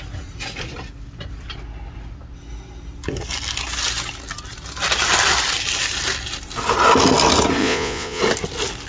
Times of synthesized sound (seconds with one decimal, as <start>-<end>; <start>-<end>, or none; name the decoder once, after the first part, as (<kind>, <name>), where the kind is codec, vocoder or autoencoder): 7.6-8.2 (vocoder, Vocos)